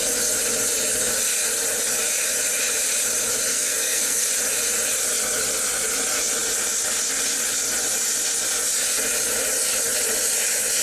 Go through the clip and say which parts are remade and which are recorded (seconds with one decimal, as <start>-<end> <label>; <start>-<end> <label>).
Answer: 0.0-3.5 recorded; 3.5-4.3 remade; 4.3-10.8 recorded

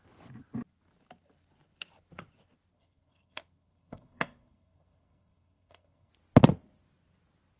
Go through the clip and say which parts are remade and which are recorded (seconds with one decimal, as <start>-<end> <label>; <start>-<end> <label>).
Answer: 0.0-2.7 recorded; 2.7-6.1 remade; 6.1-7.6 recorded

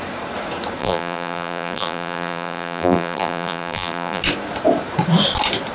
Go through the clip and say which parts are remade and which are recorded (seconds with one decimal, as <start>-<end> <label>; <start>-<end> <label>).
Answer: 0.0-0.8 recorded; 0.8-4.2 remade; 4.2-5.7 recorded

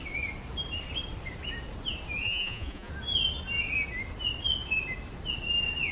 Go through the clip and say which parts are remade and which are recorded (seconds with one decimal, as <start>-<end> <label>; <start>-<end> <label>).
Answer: 0.0-2.2 recorded; 2.2-2.9 remade; 2.9-5.9 recorded

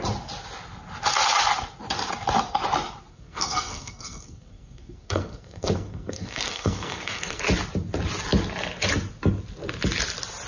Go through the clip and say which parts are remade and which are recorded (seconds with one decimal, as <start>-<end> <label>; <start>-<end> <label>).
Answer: 0.0-3.1 recorded; 3.1-7.4 remade; 7.4-10.5 recorded